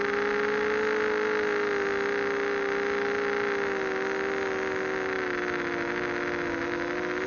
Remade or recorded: recorded